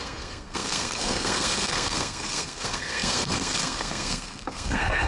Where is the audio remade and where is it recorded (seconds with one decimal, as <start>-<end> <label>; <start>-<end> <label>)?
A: 0.0-5.1 remade